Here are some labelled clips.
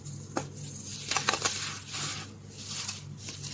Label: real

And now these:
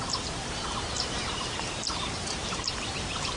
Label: fake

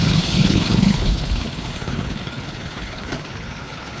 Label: fake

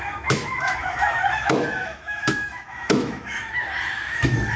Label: fake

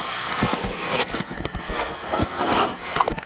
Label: fake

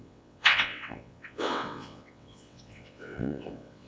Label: fake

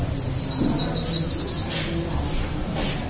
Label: real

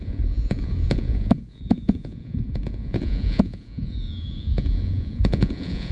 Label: fake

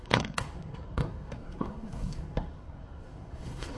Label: fake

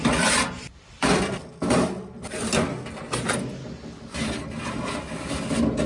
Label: real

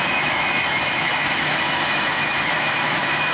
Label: fake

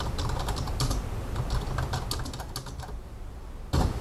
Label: real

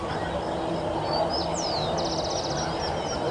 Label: real